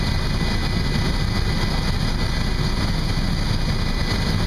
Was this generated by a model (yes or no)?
no